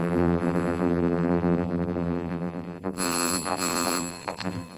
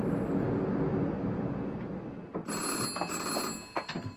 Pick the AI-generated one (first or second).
first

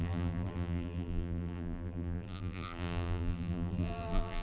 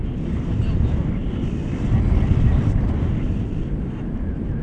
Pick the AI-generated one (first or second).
first